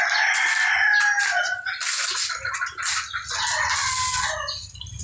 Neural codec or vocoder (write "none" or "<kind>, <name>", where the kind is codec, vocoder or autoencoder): none